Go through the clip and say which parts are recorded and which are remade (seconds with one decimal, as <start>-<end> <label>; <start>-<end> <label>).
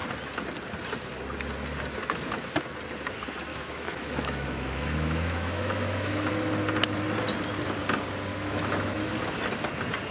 0.0-3.5 recorded; 3.5-6.3 remade; 6.3-8.3 recorded; 8.3-9.1 remade; 9.1-10.1 recorded